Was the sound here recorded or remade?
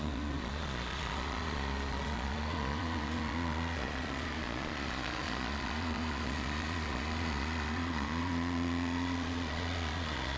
remade